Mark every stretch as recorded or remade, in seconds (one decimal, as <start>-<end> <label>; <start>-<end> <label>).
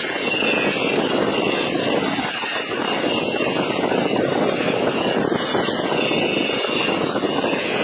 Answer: 0.0-1.3 recorded; 1.3-1.9 remade; 1.9-7.8 recorded